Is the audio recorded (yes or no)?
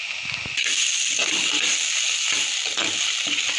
yes